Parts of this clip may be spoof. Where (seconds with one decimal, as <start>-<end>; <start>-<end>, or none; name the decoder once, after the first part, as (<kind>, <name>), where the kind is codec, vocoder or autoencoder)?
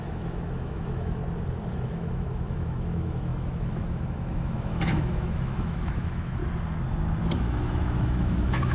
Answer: 0.0-1.2 (autoencoder, DAC-VAE); 1.7-6.4; 7.2-8.7